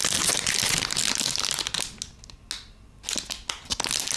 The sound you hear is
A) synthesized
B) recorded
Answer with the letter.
B